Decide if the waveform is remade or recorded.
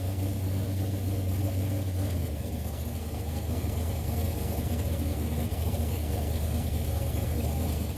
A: remade